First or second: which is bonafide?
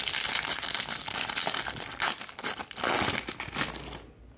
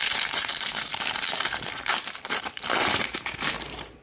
first